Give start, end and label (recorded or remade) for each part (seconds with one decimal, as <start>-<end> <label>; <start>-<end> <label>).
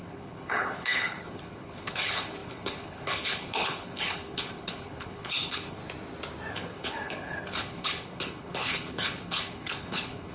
0.0-5.8 remade; 5.8-6.5 recorded; 6.5-10.3 remade